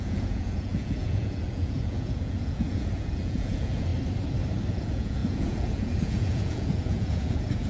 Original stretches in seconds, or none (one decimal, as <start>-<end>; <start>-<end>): 3.9-4.7